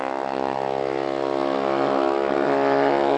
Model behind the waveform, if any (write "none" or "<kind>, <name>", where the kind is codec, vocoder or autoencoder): none